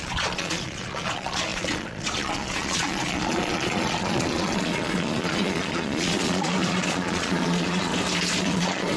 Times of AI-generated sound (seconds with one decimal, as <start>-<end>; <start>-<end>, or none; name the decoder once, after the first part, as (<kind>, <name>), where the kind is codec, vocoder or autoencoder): 0.0-7.9 (vocoder, Vocos); 8.4-9.0